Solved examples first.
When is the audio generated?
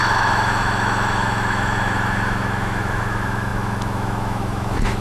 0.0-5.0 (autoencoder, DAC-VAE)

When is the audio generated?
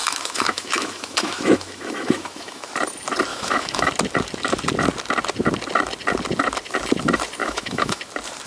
0.0-2.7 (autoencoder, DAC-VAE); 3.3-3.9; 7.4-8.0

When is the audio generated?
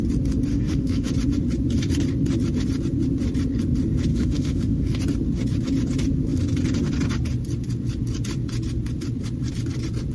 0.5-1.1 (autoencoder, DAC-VAE); 4.1-5.0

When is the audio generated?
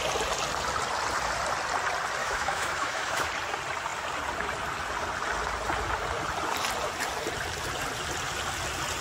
2.2-3.3 (autoencoder, DAC-VAE)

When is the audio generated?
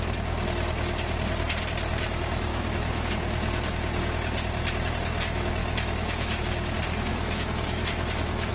2.5-3.1 (autoencoder, DAC-VAE); 5.6-6.4; 7.1-8.5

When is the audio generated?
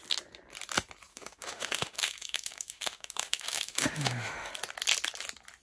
1.1-4.5 (autoencoder, DAC-VAE)